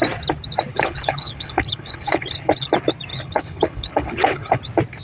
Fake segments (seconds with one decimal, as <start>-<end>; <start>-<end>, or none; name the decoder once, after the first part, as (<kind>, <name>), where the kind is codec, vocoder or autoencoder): 0.7-2.7 (codec, HILCodec); 3.1-4.6